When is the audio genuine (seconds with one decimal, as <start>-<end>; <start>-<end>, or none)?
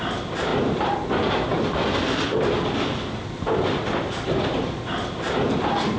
0.0-6.0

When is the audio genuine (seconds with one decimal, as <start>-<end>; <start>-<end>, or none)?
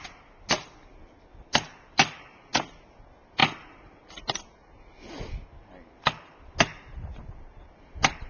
0.0-8.3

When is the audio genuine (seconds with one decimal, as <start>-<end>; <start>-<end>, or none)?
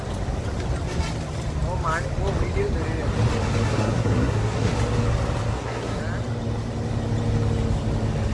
0.0-3.7; 4.7-5.5; 6.0-8.3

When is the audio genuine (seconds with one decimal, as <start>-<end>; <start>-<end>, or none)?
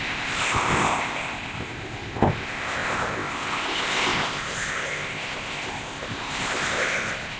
none